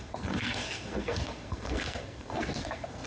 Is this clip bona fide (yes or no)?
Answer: no